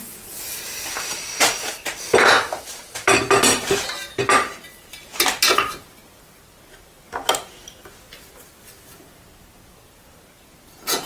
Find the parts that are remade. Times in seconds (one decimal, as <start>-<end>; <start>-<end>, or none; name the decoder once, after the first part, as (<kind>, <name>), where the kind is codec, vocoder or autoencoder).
none